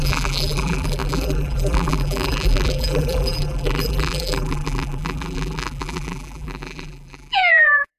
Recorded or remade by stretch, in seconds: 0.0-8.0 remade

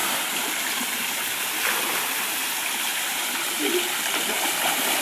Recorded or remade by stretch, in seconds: 0.0-2.9 recorded; 2.9-3.5 remade; 3.5-5.0 recorded

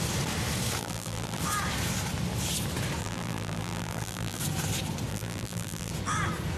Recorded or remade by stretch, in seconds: 0.0-0.8 recorded; 0.8-1.4 remade; 1.4-3.0 recorded; 3.0-4.4 remade; 4.4-5.1 recorded; 5.1-5.9 remade; 5.9-6.6 recorded